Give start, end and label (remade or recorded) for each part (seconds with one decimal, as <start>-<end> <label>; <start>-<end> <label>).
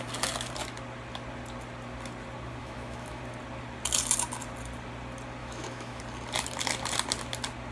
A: 0.0-2.6 recorded; 2.6-3.2 remade; 3.2-5.4 recorded; 5.4-6.0 remade; 6.0-7.7 recorded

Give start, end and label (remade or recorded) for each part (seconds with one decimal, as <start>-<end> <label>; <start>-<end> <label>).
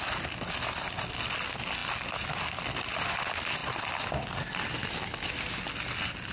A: 0.0-6.3 recorded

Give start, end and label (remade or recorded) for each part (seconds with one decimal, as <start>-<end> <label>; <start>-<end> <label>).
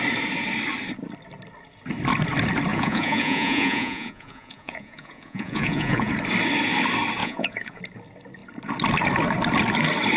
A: 0.0-2.7 recorded; 2.7-6.1 remade; 6.1-7.2 recorded; 7.2-7.8 remade; 7.8-10.2 recorded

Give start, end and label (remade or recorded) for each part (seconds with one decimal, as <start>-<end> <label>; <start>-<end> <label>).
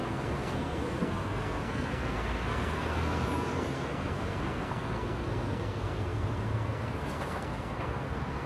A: 0.0-8.5 remade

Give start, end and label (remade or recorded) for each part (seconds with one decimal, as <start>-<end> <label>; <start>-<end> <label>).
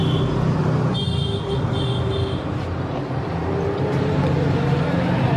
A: 0.0-5.4 recorded